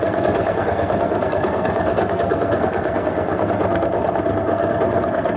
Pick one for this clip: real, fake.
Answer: fake